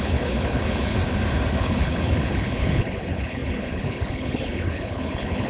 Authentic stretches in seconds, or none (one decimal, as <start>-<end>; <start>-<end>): 1.0-1.6